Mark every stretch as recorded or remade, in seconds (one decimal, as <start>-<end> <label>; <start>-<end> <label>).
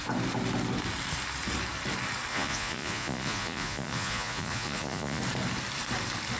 0.0-2.3 recorded; 2.3-5.2 remade; 5.2-6.4 recorded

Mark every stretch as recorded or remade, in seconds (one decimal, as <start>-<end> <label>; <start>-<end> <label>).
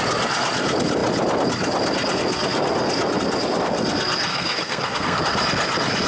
0.0-4.3 recorded; 4.3-5.2 remade; 5.2-6.1 recorded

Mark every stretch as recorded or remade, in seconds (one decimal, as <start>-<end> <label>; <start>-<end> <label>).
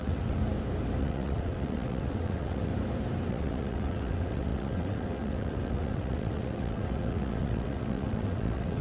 0.0-0.4 remade; 0.4-1.0 recorded; 1.0-2.7 remade; 2.7-3.3 recorded; 3.3-8.8 remade